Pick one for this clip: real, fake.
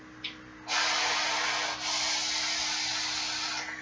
real